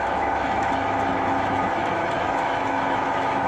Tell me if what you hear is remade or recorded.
remade